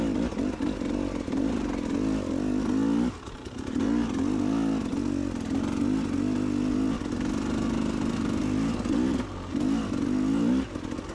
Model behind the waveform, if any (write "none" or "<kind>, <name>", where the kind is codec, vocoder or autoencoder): none